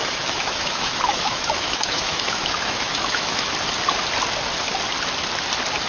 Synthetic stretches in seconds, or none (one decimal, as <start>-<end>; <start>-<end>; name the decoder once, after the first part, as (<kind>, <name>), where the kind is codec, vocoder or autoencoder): 0.0-3.5 (autoencoder, DAC-VAE)